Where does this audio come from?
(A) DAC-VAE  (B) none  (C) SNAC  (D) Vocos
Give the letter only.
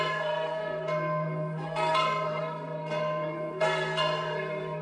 C